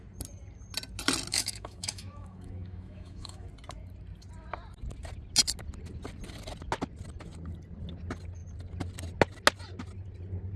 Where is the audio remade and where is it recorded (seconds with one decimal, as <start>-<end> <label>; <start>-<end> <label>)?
0.0-1.3 recorded; 1.3-3.5 remade; 3.5-10.6 recorded